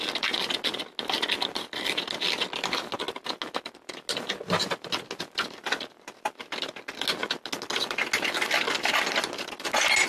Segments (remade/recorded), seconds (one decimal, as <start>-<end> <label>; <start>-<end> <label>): 0.0-10.1 recorded